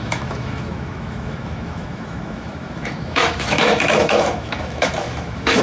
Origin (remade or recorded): remade